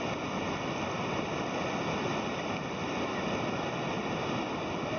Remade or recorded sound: recorded